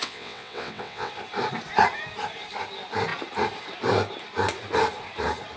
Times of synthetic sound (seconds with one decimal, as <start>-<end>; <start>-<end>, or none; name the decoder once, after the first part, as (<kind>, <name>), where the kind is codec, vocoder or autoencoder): 0.0-1.1 (vocoder, WaveNeXt)